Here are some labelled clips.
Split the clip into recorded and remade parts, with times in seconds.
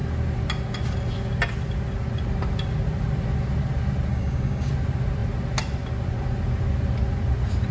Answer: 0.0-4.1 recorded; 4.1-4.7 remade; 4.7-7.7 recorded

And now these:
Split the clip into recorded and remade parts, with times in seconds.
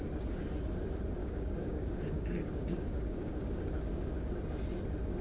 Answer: 0.0-1.2 recorded; 1.2-4.3 remade; 4.3-5.2 recorded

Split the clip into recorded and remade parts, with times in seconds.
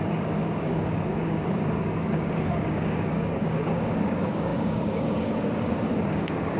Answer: 0.0-6.6 remade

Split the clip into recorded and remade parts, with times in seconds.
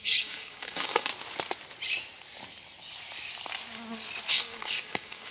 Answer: 0.0-1.1 remade; 1.1-4.3 recorded; 4.3-5.3 remade